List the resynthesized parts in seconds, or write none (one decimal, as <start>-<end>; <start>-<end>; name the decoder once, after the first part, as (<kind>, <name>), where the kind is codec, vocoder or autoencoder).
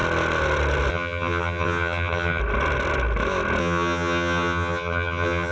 0.9-2.4 (vocoder, HiFi-GAN); 3.6-5.5